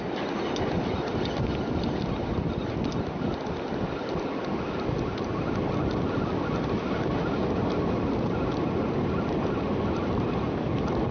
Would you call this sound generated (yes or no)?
no